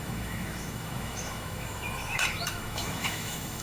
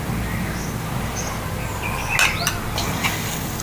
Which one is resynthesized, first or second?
first